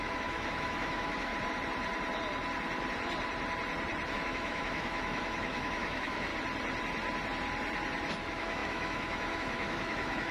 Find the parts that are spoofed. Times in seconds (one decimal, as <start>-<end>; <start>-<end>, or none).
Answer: 0.0-1.3; 4.1-6.3; 8.1-10.3